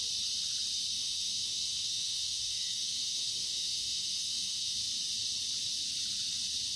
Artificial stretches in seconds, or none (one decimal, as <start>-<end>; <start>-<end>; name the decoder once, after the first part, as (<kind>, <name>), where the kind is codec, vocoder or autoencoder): 0.9-4.8 (autoencoder, DAC-VAE)

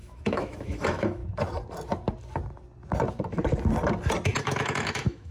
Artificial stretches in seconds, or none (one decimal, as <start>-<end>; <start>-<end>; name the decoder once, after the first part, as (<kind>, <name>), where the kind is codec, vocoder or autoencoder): 0.0-1.2 (autoencoder, DAC-VAE); 4.4-5.3

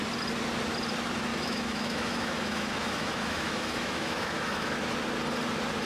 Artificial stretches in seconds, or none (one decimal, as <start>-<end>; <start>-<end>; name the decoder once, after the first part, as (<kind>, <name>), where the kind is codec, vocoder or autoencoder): 1.3-4.8 (autoencoder, DAC-VAE)

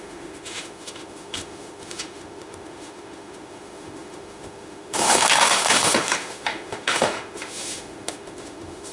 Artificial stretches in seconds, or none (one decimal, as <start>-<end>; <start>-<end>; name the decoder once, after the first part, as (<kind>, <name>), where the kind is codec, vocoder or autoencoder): 0.0-8.9 (autoencoder, DAC-VAE)

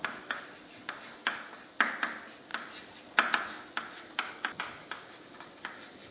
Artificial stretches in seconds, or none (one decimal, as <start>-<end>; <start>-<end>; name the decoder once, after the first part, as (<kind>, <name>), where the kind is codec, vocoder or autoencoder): none

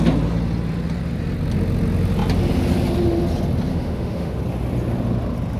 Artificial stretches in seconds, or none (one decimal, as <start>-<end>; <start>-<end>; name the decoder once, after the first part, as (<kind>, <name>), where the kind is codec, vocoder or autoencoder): 3.7-4.4 (autoencoder, DAC-VAE)